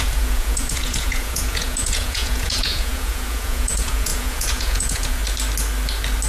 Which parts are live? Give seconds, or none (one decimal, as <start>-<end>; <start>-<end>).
5.2-6.3